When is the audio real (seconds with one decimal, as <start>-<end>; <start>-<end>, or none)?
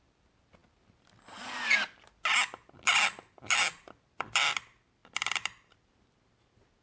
0.0-6.8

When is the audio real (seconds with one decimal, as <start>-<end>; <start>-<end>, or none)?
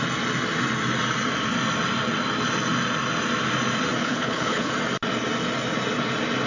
0.0-4.0; 4.7-6.5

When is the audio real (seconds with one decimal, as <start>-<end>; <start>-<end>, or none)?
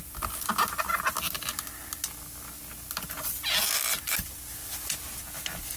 0.0-5.8